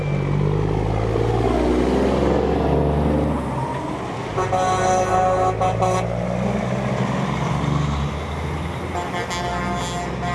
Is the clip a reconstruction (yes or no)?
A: no